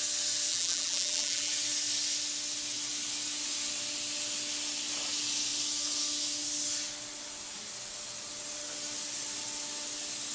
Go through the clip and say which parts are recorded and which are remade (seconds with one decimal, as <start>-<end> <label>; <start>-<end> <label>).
0.0-0.5 recorded; 0.5-1.5 remade; 1.5-10.3 recorded